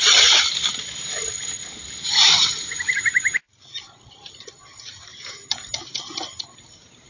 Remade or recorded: remade